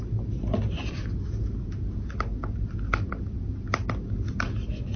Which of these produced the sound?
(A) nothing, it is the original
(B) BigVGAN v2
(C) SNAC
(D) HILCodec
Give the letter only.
A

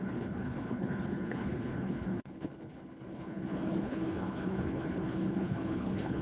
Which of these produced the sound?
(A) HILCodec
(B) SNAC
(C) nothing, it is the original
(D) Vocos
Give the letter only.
A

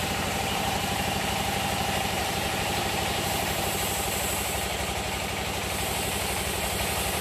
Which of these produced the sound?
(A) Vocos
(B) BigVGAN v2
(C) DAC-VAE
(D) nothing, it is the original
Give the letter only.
B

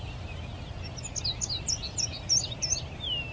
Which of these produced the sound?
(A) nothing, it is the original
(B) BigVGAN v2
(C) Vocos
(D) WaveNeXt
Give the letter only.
A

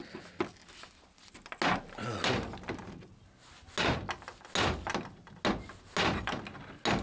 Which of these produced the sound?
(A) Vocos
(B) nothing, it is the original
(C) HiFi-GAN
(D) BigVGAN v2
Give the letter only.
B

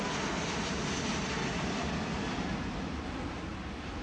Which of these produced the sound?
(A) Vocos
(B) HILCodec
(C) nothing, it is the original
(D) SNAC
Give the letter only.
C